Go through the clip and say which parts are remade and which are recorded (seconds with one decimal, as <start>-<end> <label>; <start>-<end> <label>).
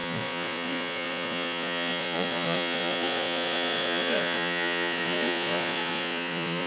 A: 0.0-6.7 remade